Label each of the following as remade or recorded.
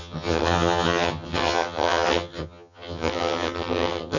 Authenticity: remade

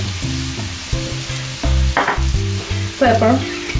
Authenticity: recorded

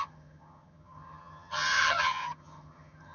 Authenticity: remade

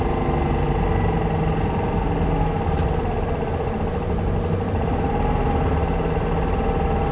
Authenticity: recorded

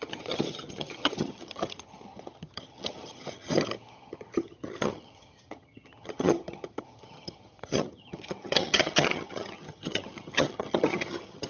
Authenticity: remade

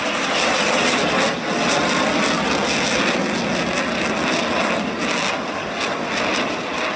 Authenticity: recorded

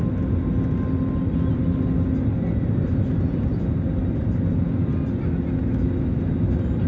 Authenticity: recorded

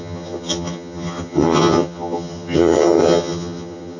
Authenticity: remade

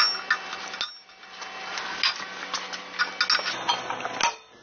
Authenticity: recorded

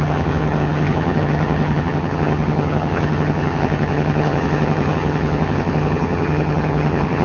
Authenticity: remade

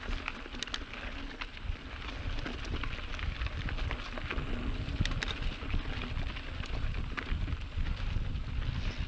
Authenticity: recorded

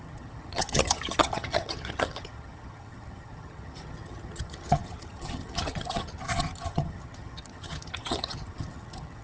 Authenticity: remade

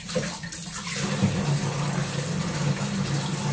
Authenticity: recorded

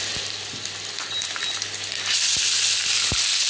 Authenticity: recorded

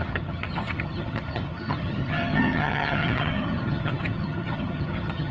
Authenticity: remade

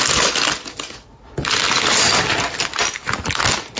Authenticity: recorded